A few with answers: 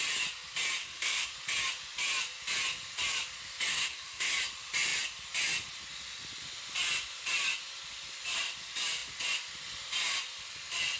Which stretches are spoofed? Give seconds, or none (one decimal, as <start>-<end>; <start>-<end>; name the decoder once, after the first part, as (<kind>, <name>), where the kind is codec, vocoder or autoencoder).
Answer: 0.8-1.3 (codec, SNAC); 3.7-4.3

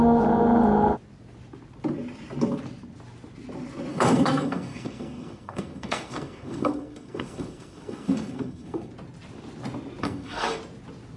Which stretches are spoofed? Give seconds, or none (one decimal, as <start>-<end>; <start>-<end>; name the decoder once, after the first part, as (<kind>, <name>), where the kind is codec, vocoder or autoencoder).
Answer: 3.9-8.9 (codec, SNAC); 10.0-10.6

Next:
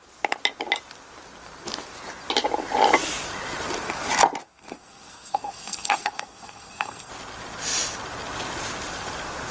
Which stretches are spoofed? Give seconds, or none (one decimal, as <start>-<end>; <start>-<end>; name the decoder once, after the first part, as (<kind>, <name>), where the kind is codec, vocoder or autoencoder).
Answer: 4.4-7.1 (codec, SNAC)

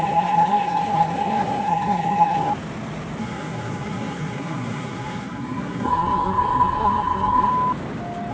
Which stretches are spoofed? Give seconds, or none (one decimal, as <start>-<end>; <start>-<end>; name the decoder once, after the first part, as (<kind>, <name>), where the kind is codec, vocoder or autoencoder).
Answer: 0.0-2.5 (codec, SNAC); 3.2-7.5